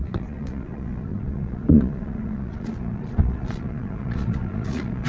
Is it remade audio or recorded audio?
remade